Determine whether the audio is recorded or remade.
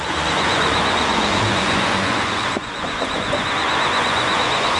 remade